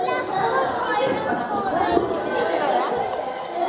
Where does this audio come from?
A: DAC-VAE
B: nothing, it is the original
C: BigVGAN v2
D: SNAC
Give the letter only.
B